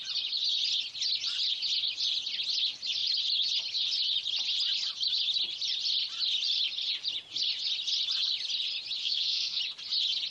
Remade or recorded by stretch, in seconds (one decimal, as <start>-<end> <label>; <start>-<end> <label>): 0.0-9.0 recorded; 9.0-9.6 remade; 9.6-10.3 recorded